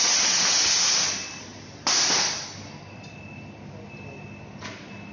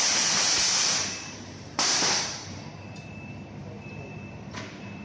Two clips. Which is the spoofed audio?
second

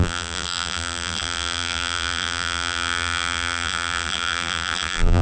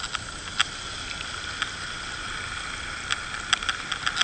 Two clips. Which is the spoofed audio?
first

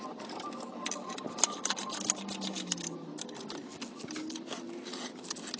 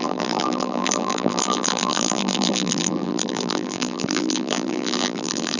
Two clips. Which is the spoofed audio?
second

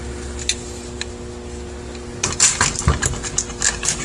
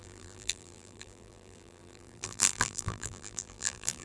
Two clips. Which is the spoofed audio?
second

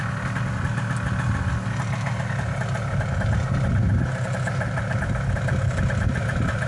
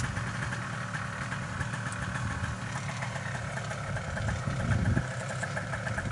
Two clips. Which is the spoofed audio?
second